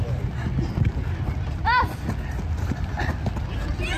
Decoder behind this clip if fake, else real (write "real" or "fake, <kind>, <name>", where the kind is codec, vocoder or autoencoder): real